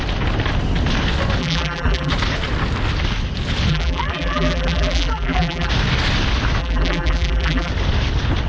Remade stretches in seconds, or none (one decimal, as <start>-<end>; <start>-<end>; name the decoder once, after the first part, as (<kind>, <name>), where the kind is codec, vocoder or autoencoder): 1.4-2.1 (vocoder, BigVGAN v2); 3.7-5.7; 6.6-7.7